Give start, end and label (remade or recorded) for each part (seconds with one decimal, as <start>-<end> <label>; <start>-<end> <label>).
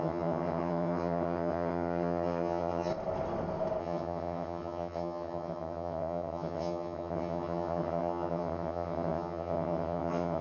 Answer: 0.0-2.9 remade; 2.9-3.8 recorded; 3.8-10.4 remade